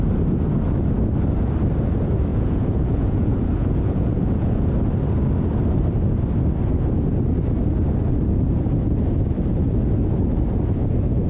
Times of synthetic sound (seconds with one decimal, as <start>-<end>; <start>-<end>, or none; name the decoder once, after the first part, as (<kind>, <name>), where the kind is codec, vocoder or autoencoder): 2.3-4.7 (vocoder, Vocos)